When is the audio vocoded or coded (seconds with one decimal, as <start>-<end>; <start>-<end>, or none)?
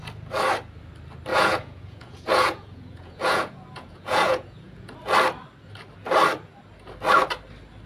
1.3-4.9